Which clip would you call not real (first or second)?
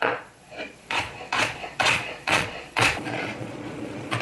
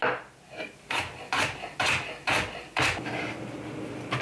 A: first